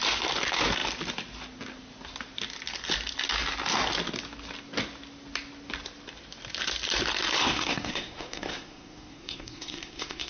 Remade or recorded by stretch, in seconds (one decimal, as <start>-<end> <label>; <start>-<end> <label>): 0.0-7.4 recorded; 7.4-10.3 remade